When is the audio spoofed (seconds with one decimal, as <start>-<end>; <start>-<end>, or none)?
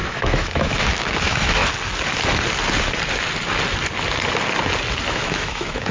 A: 0.0-1.6; 5.1-5.9